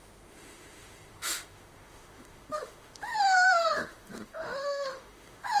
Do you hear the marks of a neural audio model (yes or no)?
yes